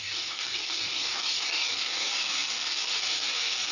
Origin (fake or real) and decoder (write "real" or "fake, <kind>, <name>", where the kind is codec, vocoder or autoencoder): fake, codec, DAC